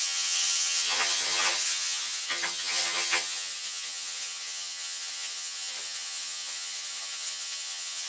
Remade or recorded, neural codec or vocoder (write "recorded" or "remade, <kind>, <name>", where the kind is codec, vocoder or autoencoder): remade, vocoder, HiFi-GAN